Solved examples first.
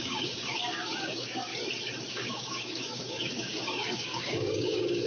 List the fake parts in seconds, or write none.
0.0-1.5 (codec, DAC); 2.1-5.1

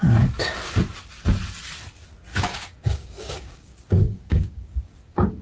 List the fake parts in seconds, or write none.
2.3-5.4 (codec, DAC)